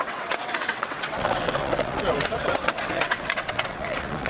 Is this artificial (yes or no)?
yes